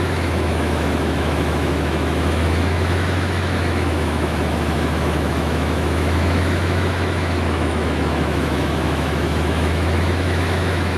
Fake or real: fake